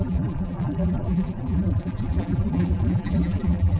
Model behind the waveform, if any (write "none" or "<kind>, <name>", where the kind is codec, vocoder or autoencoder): vocoder, BigVGAN v2